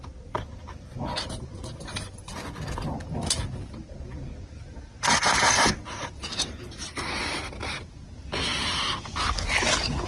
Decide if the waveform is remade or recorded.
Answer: recorded